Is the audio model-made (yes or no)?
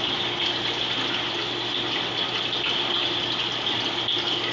no